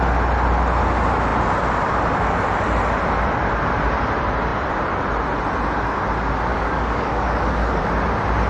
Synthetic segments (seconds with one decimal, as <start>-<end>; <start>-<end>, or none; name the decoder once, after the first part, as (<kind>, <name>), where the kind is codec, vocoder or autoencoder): 6.5-7.8 (codec, DAC)